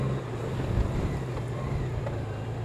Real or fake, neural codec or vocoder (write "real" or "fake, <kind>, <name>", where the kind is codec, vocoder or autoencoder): real